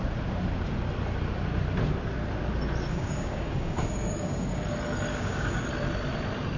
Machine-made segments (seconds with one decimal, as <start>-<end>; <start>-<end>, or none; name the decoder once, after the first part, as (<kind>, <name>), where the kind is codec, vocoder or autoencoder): 2.9-4.6 (codec, DAC); 5.1-5.6